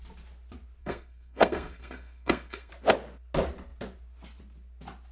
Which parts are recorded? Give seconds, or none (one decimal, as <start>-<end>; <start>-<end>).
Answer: 0.0-0.8; 2.7-5.1